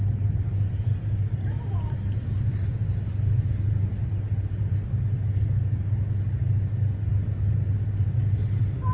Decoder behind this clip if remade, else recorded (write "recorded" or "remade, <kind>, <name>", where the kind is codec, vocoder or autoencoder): recorded